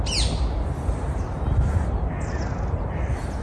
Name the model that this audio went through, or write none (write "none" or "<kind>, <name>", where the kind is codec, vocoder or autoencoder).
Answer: none